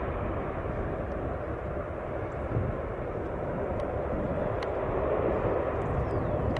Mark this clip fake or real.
real